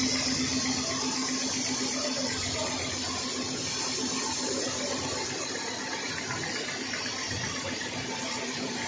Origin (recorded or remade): recorded